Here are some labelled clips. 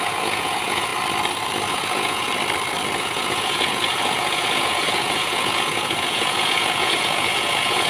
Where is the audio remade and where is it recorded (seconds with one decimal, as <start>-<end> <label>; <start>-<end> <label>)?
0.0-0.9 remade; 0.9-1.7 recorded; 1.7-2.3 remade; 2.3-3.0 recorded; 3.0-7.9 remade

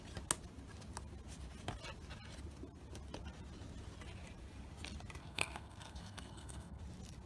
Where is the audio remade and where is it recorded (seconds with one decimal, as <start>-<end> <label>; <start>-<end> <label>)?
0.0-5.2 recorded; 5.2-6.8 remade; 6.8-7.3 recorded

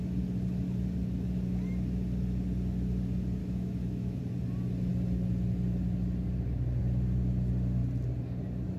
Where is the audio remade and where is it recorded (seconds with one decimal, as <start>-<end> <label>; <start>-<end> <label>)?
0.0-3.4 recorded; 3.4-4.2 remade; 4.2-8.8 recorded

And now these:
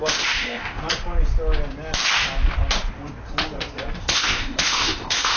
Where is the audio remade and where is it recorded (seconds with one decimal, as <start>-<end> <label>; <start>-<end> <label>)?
0.0-0.8 remade; 0.8-4.0 recorded; 4.0-5.4 remade